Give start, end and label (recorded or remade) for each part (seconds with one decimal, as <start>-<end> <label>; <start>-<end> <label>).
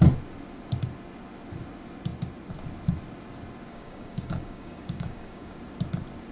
0.0-3.7 recorded; 3.7-5.6 remade; 5.6-6.3 recorded